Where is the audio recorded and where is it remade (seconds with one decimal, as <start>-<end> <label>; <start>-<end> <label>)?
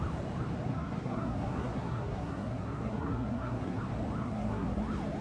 0.0-0.7 recorded; 0.7-3.8 remade; 3.8-4.2 recorded; 4.2-4.8 remade; 4.8-5.2 recorded